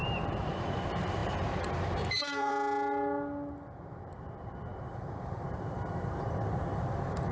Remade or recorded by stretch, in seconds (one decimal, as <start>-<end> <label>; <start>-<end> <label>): 0.0-2.5 remade; 2.5-4.2 recorded; 4.2-7.3 remade